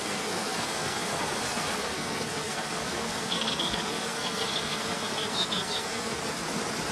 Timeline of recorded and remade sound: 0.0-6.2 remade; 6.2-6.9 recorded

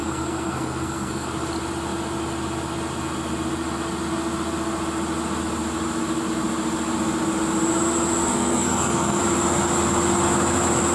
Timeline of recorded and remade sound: 0.0-1.3 remade; 1.3-8.3 recorded; 8.3-9.2 remade; 9.2-10.9 recorded

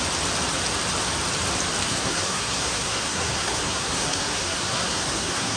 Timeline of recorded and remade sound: 0.0-1.9 recorded; 1.9-5.6 remade

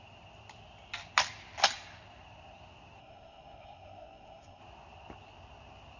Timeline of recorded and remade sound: 0.0-3.0 recorded; 3.0-4.6 remade; 4.6-6.0 recorded

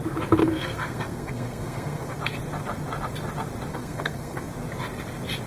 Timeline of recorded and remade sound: 0.0-0.4 recorded; 0.4-2.2 remade; 2.2-3.7 recorded; 3.7-4.5 remade; 4.5-5.5 recorded